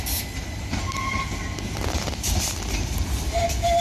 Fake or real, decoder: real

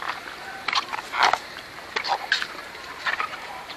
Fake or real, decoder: fake, vocoder, BigVGAN v2